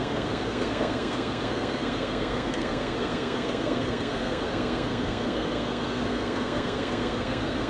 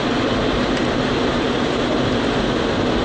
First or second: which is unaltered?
second